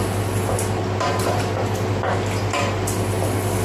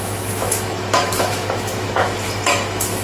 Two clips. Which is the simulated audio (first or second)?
second